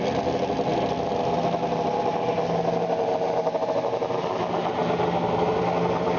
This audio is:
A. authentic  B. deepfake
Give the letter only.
A